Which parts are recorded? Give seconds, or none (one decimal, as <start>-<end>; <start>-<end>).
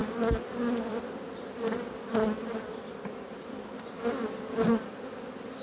0.0-5.6